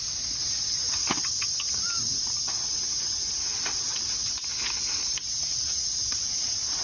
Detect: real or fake fake